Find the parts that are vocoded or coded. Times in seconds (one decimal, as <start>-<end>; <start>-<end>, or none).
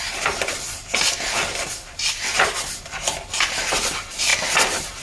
none